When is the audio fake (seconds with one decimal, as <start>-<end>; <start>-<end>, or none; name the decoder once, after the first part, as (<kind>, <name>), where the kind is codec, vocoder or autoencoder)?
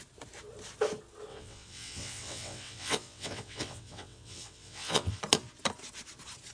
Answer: 1.3-5.2 (vocoder, WaveNeXt)